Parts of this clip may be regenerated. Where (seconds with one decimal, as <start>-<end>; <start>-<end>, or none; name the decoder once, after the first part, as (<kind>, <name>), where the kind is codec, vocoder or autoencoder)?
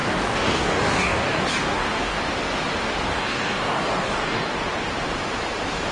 0.0-2.2 (codec, DAC); 3.1-4.5